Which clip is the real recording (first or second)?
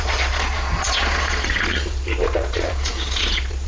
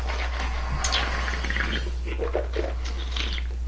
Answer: second